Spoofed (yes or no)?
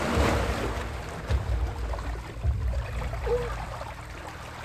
no